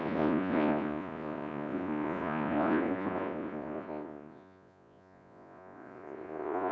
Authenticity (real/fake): fake